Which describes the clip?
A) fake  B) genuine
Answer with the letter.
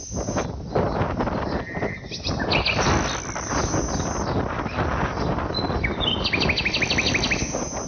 B